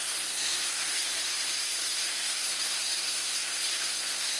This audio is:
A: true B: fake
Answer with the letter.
B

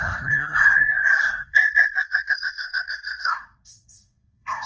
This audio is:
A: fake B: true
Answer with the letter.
A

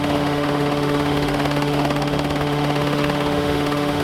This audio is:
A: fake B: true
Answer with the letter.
A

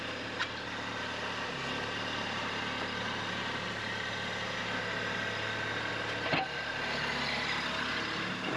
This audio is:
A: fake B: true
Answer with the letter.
B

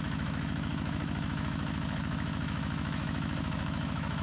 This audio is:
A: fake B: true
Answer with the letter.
A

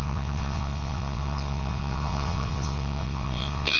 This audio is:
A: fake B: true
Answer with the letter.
A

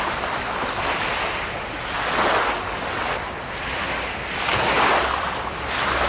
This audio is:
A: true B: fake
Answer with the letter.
A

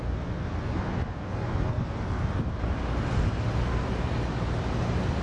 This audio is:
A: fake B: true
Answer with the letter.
B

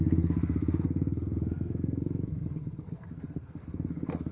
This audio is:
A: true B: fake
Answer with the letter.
B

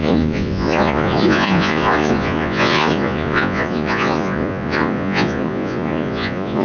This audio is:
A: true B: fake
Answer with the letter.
B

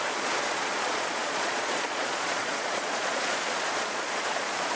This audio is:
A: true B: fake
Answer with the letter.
B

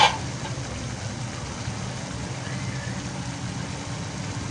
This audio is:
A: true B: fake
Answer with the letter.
A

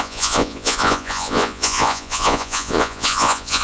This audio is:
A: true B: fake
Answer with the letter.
B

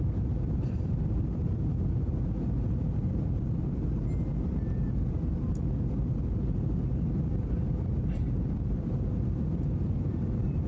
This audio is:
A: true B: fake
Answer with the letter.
B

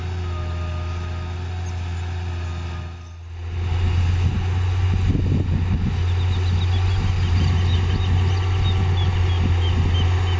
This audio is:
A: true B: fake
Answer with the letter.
A